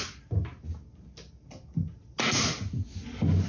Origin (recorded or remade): recorded